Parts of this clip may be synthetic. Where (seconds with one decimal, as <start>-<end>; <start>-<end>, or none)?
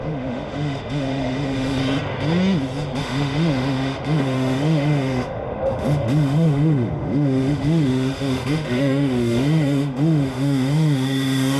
0.0-1.8; 3.0-11.6